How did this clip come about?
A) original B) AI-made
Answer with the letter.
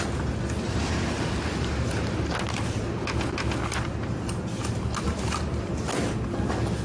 A